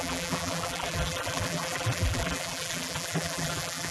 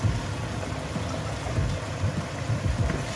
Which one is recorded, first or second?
second